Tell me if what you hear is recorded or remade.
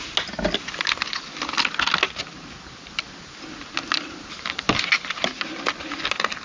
recorded